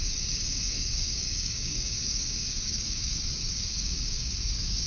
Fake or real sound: fake